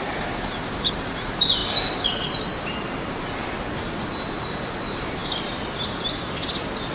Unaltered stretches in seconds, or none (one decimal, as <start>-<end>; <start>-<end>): 0.0-6.9